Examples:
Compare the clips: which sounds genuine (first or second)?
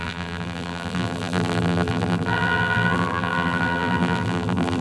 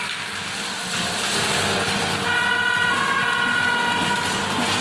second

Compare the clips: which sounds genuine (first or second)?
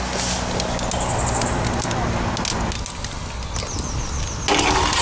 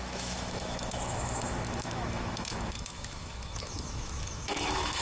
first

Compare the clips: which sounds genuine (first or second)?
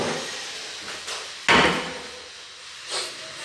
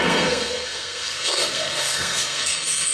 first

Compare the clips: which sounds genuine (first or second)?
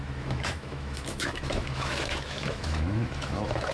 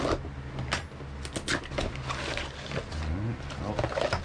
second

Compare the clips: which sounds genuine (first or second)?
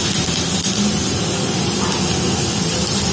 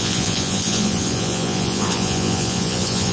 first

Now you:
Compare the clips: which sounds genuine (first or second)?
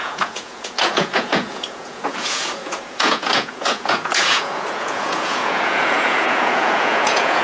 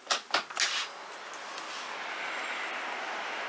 second